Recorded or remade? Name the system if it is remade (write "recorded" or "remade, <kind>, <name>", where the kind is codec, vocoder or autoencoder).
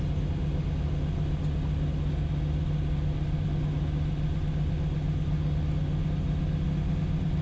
recorded